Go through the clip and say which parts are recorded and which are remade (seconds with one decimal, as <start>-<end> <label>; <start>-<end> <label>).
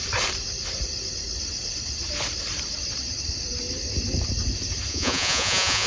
0.0-4.9 recorded; 4.9-5.9 remade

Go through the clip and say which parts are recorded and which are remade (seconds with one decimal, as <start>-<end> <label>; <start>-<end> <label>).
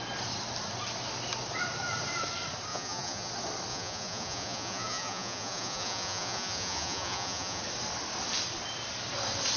0.0-2.7 recorded; 2.7-3.3 remade; 3.3-3.7 recorded; 3.7-7.6 remade; 7.6-9.6 recorded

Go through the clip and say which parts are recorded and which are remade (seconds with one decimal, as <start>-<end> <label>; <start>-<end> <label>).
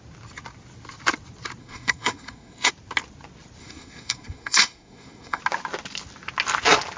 0.0-1.6 recorded; 1.6-2.7 remade; 2.7-3.6 recorded; 3.6-5.4 remade; 5.4-7.0 recorded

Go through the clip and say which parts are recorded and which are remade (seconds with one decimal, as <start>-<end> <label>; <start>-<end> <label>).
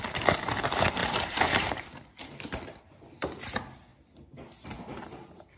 0.0-1.0 recorded; 1.0-2.2 remade; 2.2-5.6 recorded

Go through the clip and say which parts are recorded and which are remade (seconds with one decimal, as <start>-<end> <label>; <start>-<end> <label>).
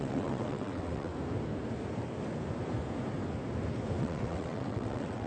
0.0-1.1 remade; 1.1-4.0 recorded; 4.0-5.3 remade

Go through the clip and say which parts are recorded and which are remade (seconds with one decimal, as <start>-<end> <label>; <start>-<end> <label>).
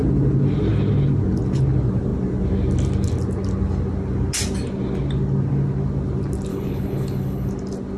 0.0-6.5 recorded; 6.5-7.5 remade; 7.5-8.0 recorded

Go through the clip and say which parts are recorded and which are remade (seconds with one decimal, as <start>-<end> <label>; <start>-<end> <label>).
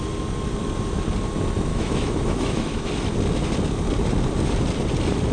0.0-1.7 recorded; 1.7-2.9 remade; 2.9-5.3 recorded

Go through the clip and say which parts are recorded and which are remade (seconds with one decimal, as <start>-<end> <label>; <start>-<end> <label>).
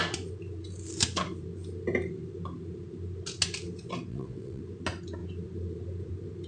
0.0-4.1 recorded; 4.1-4.6 remade; 4.6-6.5 recorded